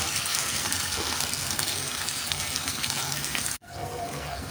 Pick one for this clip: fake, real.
fake